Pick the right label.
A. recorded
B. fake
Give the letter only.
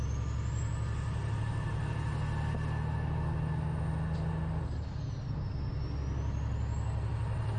A